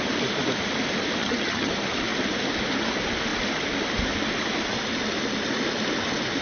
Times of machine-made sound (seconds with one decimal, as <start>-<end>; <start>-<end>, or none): 1.2-1.7